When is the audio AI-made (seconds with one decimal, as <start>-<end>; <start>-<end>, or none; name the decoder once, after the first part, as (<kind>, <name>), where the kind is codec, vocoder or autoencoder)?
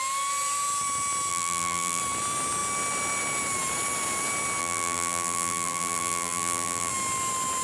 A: 1.3-2.0 (vocoder, BigVGAN v2); 4.6-6.9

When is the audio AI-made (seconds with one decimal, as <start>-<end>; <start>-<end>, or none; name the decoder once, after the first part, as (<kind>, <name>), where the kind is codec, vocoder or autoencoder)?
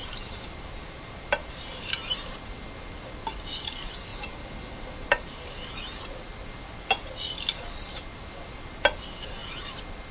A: 0.0-1.9 (vocoder, BigVGAN v2); 4.1-5.6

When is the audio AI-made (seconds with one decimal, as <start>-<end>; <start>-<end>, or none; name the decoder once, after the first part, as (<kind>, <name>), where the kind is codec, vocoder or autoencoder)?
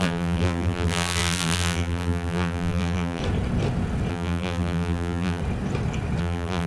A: 0.0-3.2 (vocoder, BigVGAN v2); 4.1-5.4; 6.2-6.7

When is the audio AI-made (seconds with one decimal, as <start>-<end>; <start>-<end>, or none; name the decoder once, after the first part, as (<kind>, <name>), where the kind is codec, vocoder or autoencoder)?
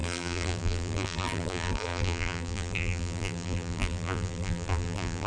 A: 0.0-5.3 (vocoder, BigVGAN v2)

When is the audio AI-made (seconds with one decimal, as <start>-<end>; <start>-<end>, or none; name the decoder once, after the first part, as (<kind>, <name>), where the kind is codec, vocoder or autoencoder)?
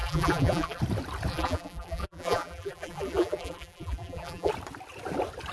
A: 0.0-0.8 (vocoder, BigVGAN v2); 1.3-4.5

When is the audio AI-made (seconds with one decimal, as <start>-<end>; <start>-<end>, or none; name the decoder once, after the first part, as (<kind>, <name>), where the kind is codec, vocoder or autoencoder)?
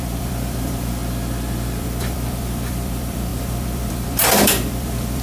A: 0.0-1.0 (vocoder, BigVGAN v2); 1.8-5.2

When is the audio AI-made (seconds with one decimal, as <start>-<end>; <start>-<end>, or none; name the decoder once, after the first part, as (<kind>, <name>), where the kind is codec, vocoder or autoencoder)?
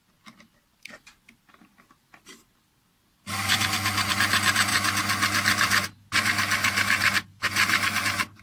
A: none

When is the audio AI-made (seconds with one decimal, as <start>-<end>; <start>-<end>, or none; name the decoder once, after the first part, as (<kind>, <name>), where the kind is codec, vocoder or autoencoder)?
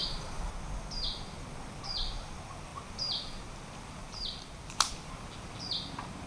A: 0.0-0.5 (vocoder, BigVGAN v2); 4.0-4.9